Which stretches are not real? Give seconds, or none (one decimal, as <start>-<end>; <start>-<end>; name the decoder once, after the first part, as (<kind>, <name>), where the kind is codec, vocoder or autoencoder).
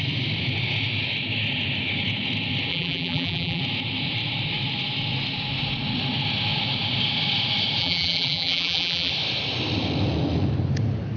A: 2.7-3.6 (vocoder, BigVGAN v2); 7.8-9.1